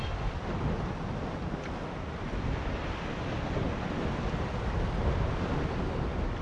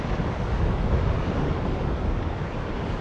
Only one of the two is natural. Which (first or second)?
first